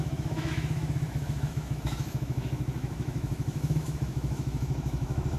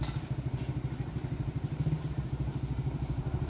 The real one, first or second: second